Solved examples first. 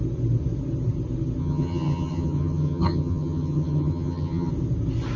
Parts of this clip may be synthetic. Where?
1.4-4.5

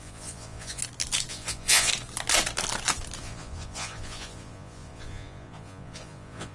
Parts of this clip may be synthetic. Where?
0.0-0.8; 1.3-1.9; 3.2-6.5

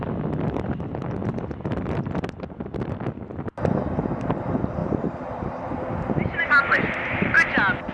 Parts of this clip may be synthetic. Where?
4.8-6.5

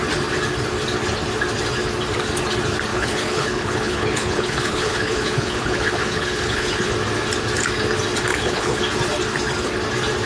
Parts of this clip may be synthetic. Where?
2.9-6.9; 8.3-8.8